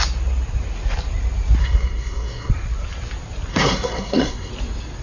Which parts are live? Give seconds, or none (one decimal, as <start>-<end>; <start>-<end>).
0.0-1.6; 2.5-3.5; 4.5-5.0